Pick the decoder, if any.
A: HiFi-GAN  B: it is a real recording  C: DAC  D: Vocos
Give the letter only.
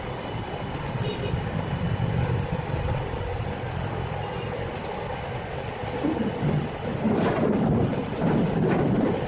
B